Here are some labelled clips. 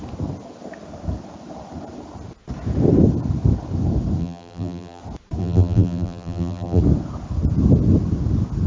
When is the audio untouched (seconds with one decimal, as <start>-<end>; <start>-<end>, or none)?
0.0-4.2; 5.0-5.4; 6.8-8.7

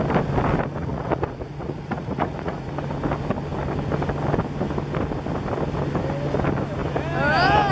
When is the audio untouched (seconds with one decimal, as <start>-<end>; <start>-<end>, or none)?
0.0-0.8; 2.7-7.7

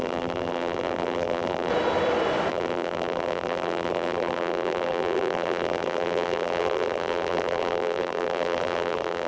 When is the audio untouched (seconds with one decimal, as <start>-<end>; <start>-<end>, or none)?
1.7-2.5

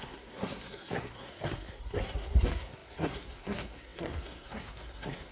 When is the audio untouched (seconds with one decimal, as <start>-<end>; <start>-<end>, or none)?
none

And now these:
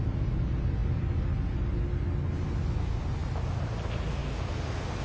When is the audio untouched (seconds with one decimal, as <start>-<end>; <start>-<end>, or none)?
0.0-5.0